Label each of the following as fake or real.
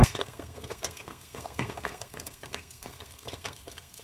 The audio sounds fake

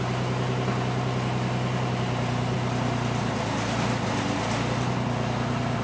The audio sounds real